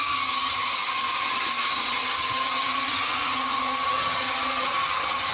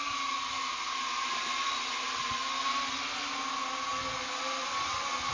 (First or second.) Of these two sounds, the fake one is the first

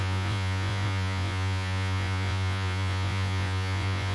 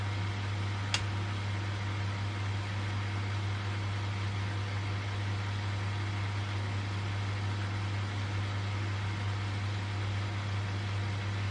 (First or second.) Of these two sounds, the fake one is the first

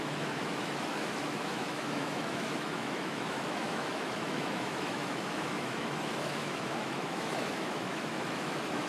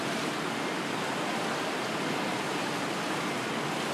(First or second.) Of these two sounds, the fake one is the first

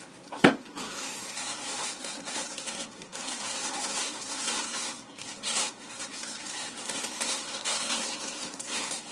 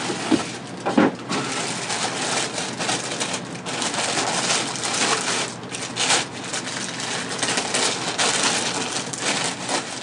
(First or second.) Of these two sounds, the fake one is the first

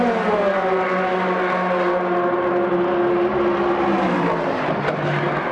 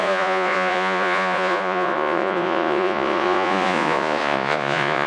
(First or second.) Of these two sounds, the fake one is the second